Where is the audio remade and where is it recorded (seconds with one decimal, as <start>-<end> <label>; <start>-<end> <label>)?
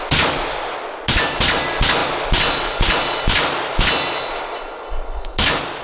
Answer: 0.0-5.8 recorded